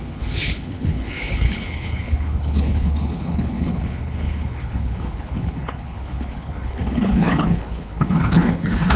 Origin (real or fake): fake